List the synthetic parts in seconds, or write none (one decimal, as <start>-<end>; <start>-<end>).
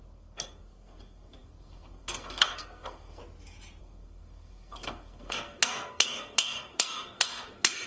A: 0.0-3.2; 3.8-7.9